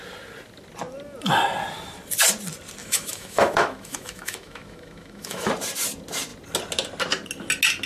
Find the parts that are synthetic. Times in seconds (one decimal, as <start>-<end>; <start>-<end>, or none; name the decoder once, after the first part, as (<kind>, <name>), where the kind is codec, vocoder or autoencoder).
2.8-5.5 (autoencoder, DAC-VAE)